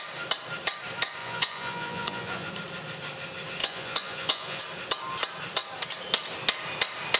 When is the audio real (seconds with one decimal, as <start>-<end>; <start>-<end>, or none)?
0.0-1.2; 2.5-3.6; 4.6-7.2

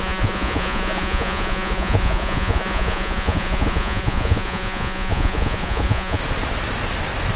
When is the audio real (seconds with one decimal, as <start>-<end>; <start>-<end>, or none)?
6.2-7.4